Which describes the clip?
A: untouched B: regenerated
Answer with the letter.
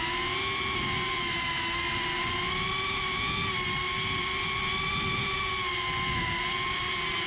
A